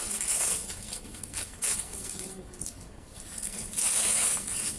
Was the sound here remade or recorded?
remade